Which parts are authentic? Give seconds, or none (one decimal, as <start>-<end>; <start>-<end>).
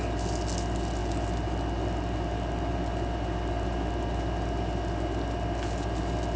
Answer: 0.0-6.4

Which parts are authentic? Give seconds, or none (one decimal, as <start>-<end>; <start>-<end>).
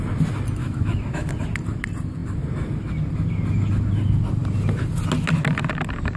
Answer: 0.0-0.6; 1.3-6.2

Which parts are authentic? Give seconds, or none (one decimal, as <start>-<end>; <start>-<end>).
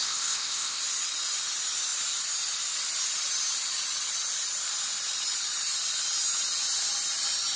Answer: 0.8-7.6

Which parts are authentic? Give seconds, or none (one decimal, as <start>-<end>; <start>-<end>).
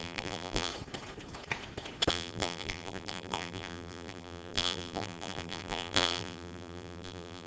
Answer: 0.7-2.1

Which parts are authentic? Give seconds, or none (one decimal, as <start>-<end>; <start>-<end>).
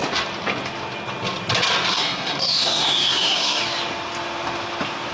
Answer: 0.0-1.9; 3.6-5.1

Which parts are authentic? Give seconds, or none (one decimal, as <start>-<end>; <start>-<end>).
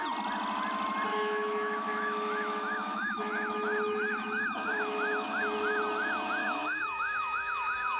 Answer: 0.0-1.1; 5.4-6.4